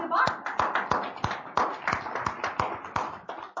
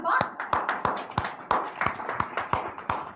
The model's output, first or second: second